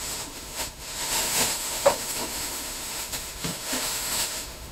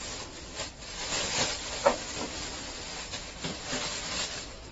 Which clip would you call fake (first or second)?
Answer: first